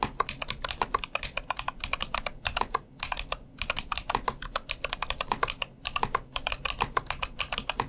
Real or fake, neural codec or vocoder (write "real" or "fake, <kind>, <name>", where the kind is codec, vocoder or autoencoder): real